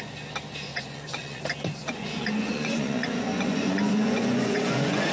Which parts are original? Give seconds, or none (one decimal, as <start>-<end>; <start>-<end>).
0.0-0.7; 1.4-1.8